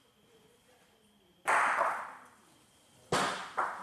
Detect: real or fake real